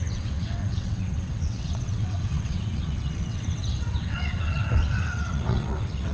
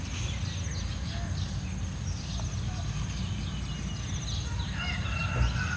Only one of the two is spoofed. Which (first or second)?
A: first